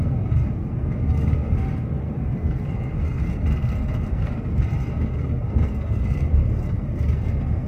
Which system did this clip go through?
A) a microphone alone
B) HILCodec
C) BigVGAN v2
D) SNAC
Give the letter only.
D